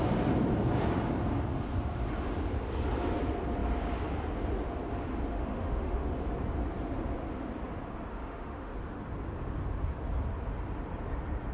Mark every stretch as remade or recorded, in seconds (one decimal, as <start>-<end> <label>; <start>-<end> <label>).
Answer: 0.0-5.3 recorded; 5.3-6.1 remade; 6.1-8.1 recorded; 8.1-8.7 remade; 8.7-11.5 recorded